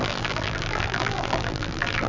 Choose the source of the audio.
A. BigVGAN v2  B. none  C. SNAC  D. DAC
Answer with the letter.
A